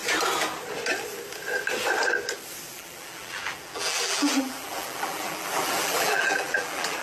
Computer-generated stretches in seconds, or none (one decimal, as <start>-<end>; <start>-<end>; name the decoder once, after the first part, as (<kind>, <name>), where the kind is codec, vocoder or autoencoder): 2.7-7.0 (vocoder, BigVGAN v2)